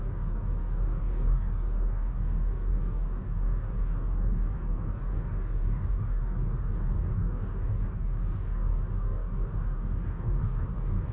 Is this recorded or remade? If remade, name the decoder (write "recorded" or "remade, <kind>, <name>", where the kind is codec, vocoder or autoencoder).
remade, codec, DAC